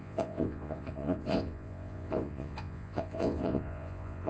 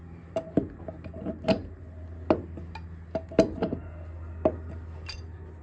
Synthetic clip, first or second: first